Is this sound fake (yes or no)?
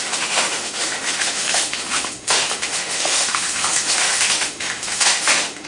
yes